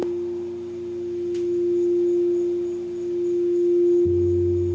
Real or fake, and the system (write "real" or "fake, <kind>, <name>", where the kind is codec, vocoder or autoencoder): real